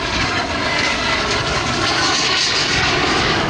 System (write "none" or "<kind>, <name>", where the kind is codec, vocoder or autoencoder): codec, DAC